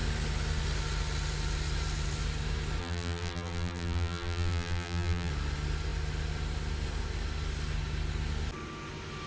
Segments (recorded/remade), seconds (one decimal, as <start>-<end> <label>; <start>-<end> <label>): 0.0-2.8 recorded; 2.8-5.3 remade; 5.3-9.3 recorded